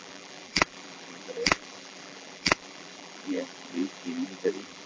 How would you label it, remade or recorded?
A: remade